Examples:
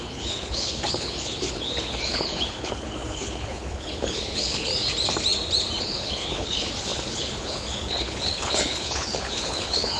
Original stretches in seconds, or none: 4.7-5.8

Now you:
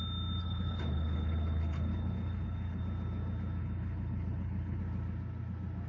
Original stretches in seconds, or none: 0.0-0.4; 2.8-3.6; 4.8-5.9

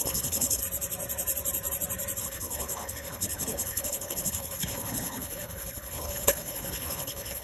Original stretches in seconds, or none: 0.6-2.2

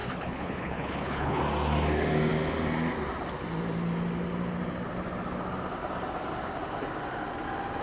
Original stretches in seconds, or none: 1.4-7.8

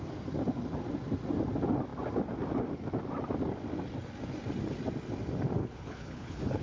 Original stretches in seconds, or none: 0.0-5.6

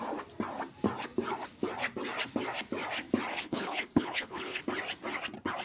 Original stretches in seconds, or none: 0.0-3.3; 4.6-5.6

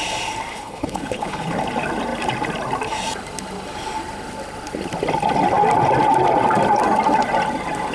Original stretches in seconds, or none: 0.0-0.5; 1.5-7.9

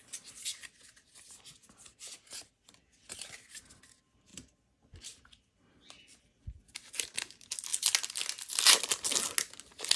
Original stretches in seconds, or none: 0.0-10.0